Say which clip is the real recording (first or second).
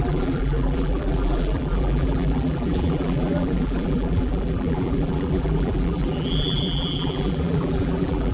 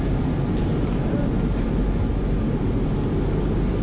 second